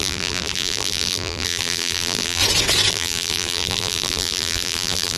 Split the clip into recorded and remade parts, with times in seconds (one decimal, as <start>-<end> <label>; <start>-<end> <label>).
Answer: 0.0-2.4 remade; 2.4-2.9 recorded; 2.9-5.2 remade